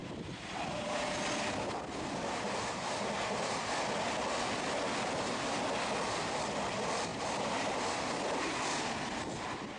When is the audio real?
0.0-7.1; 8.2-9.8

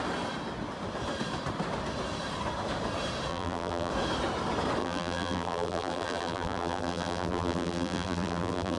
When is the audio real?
0.0-3.3; 3.9-4.8

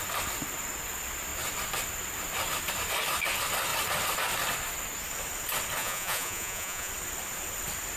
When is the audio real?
0.0-5.8; 6.9-8.0

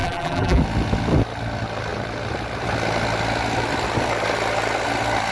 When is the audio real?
0.6-5.3